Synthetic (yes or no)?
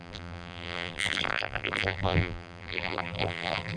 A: yes